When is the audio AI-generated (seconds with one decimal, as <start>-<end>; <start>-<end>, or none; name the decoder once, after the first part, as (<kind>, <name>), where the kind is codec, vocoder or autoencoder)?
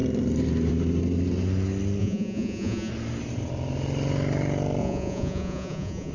2.0-2.9 (vocoder, Vocos); 4.8-6.1